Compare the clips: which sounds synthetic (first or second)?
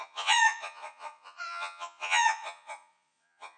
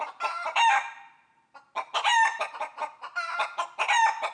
first